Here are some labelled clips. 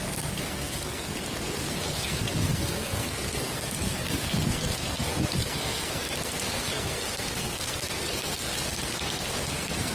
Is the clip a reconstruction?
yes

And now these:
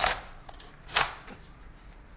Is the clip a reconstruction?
yes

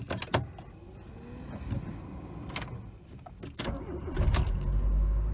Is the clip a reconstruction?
no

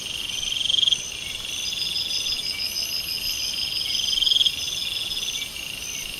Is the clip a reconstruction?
no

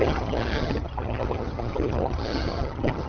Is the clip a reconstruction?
yes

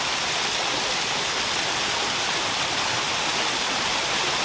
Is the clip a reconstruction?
no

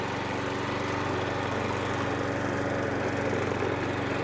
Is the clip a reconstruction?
no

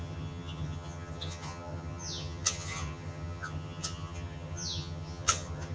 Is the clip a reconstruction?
yes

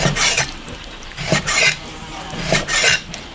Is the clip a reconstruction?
yes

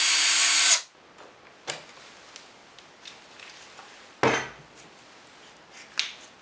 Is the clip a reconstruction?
no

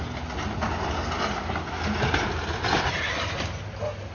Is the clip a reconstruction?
no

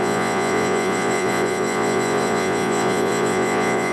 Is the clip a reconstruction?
yes